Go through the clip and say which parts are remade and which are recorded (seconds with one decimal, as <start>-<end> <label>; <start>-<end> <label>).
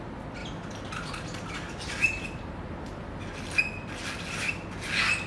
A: 0.0-5.3 recorded